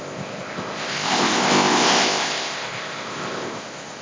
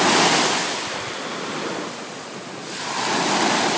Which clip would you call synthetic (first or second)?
first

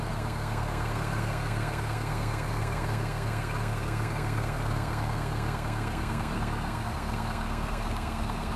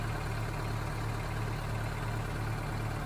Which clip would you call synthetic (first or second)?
first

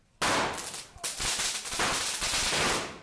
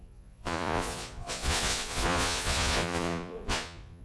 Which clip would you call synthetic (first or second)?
second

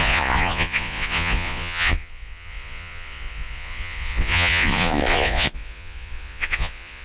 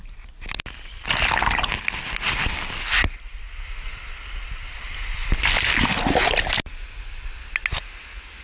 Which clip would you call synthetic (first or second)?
first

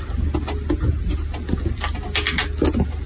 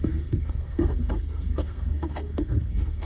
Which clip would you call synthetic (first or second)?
second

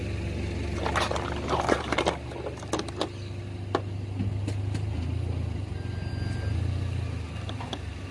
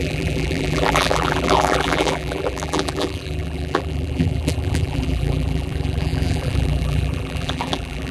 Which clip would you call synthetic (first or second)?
second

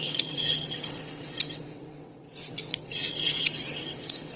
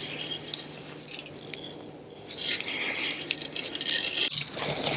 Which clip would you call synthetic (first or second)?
first